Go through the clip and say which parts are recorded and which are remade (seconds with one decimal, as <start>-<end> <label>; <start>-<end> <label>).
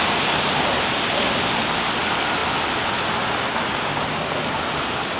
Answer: 0.0-5.2 recorded